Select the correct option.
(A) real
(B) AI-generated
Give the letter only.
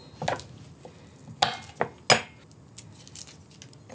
A